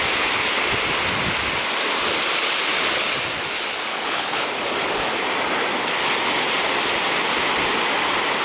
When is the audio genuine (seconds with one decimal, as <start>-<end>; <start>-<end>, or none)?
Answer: 0.0-3.9; 4.5-8.4

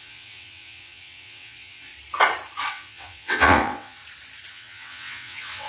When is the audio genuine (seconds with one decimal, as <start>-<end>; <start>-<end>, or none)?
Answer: 1.9-2.7; 4.0-4.5

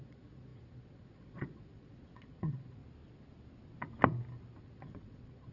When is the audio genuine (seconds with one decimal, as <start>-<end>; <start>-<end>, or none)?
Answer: 2.8-4.6

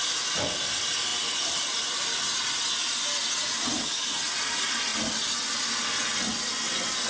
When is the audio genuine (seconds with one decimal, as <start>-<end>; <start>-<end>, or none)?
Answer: 0.0-7.1

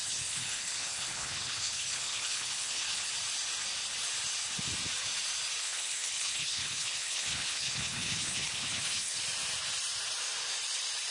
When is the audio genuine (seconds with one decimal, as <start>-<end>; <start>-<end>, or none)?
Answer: 3.1-5.6; 9.2-11.1